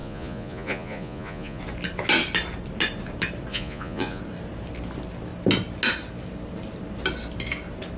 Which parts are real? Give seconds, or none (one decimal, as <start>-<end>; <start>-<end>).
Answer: 1.6-3.5; 4.2-8.0